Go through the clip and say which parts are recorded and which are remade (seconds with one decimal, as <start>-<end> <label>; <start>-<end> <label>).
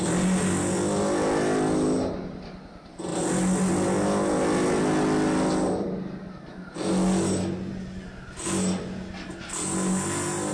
0.0-10.5 recorded